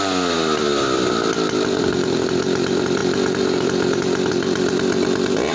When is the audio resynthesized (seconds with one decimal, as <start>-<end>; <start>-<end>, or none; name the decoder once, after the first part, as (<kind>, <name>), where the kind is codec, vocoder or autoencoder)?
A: 0.0-5.5 (vocoder, BigVGAN v2)